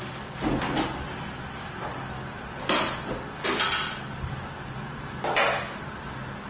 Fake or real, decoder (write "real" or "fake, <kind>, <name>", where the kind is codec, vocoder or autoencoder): real